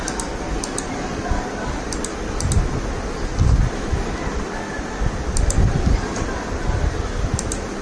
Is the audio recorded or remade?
recorded